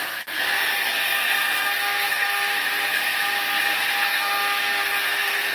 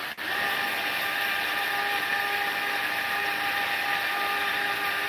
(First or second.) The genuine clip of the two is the second